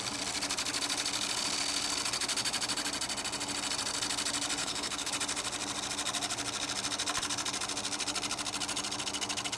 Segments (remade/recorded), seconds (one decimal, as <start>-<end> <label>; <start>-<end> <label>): 0.0-4.6 recorded; 4.6-5.1 remade; 5.1-9.6 recorded